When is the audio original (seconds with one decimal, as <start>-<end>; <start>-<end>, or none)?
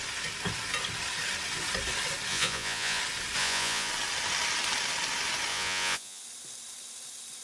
0.0-2.3; 3.0-3.4; 3.9-5.5; 6.2-7.4